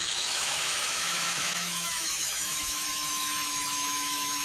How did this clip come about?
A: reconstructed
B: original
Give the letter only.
A